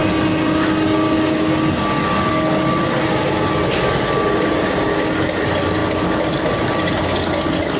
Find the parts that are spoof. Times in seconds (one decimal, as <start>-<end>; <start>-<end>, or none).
none